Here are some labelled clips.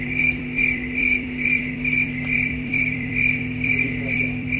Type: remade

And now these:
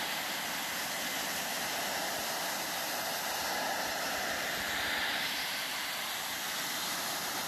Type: recorded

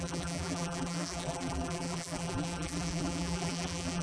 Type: remade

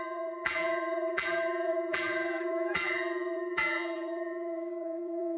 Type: remade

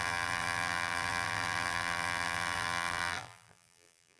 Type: remade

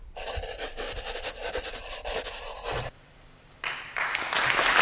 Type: remade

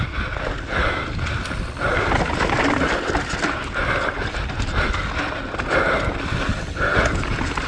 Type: recorded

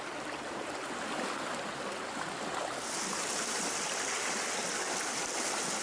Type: recorded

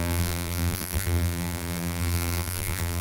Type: remade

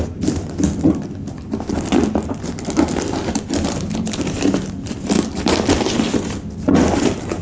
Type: remade